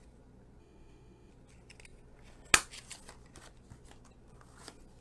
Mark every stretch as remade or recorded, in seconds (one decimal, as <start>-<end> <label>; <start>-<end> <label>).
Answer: 0.0-0.6 recorded; 0.6-1.3 remade; 1.3-5.0 recorded